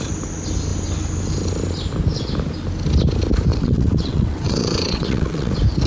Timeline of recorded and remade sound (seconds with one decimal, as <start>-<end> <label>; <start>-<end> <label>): 0.0-3.5 recorded; 3.5-5.5 remade; 5.5-5.9 recorded